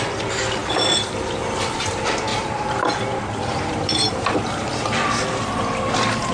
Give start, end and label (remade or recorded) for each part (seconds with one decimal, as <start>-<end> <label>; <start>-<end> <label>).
0.0-2.3 recorded; 2.3-4.7 remade; 4.7-6.3 recorded